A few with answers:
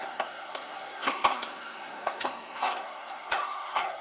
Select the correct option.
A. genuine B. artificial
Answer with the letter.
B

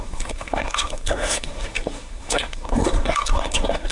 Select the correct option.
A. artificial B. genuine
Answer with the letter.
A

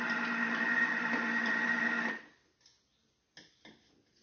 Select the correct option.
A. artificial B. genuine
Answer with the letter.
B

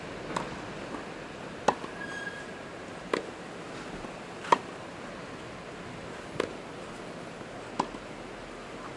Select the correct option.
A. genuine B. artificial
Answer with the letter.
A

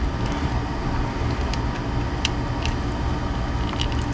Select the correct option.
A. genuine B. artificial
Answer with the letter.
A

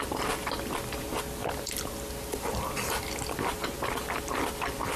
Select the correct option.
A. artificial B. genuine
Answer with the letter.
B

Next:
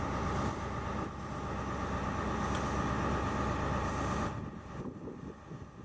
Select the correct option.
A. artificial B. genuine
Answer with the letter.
B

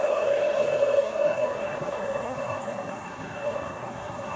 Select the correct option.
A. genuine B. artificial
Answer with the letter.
B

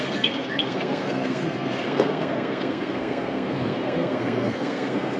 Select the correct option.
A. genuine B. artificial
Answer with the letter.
B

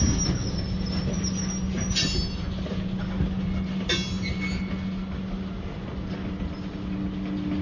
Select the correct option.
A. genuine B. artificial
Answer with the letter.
A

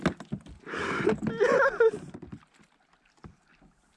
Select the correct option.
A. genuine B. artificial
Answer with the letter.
A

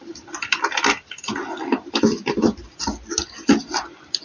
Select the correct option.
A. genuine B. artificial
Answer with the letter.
A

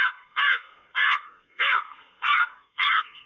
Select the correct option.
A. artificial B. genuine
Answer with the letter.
A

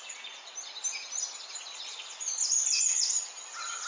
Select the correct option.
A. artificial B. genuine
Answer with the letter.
B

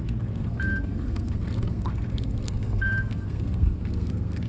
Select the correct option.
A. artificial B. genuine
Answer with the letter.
A